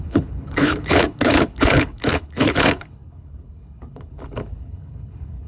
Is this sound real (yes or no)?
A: no